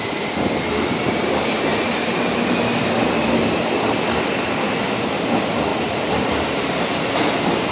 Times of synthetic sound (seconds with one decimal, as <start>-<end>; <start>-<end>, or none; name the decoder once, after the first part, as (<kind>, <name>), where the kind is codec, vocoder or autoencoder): none